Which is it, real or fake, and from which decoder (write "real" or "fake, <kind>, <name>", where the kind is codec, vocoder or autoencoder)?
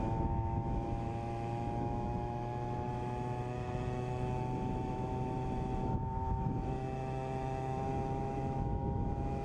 fake, autoencoder, DAC-VAE